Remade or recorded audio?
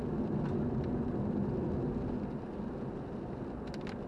recorded